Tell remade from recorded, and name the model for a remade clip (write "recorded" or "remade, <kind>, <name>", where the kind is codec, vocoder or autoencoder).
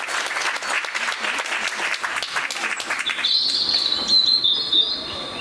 recorded